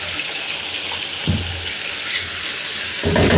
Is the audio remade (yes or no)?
no